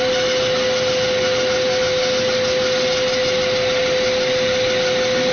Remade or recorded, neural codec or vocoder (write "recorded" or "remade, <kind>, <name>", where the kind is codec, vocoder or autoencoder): recorded